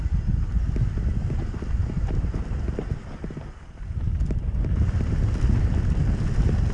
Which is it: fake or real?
real